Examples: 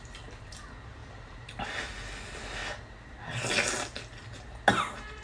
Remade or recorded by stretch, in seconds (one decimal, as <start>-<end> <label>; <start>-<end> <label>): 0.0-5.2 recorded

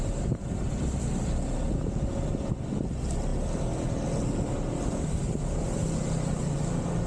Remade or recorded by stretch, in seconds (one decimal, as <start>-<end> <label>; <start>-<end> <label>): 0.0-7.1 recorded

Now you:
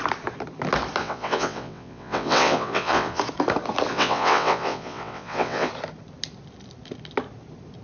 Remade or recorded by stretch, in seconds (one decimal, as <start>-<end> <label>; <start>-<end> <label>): 0.0-1.0 recorded; 1.0-3.2 remade; 3.2-3.9 recorded; 3.9-5.7 remade; 5.7-7.8 recorded

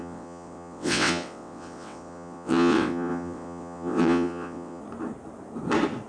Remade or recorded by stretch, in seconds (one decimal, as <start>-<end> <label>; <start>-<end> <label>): 0.0-4.8 remade; 4.8-6.1 recorded

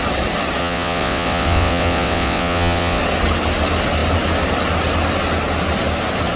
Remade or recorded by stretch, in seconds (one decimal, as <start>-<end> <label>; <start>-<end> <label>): 0.0-0.6 recorded; 0.6-3.0 remade; 3.0-6.4 recorded

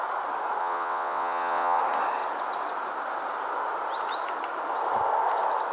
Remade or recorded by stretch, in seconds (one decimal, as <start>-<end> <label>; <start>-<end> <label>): 0.0-0.6 recorded; 0.6-1.8 remade; 1.8-5.7 recorded